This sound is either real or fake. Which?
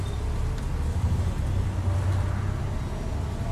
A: real